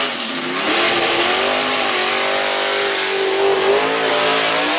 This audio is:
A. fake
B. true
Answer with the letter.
B